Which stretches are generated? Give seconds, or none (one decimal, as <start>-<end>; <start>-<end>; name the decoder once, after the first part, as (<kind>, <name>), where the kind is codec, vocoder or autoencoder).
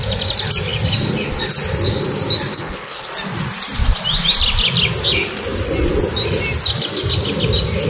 2.5-3.1 (codec, HILCodec)